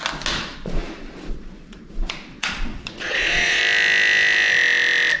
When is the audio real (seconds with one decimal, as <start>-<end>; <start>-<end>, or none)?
0.0-0.5; 3.6-5.2